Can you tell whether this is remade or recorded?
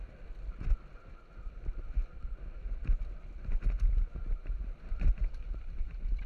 recorded